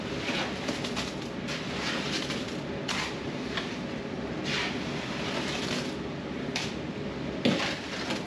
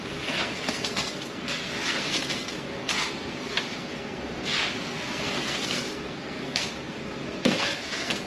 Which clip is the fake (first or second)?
second